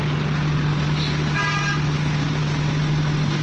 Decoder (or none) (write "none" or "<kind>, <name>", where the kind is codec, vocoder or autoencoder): none